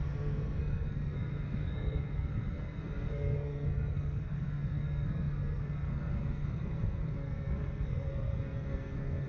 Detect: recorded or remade remade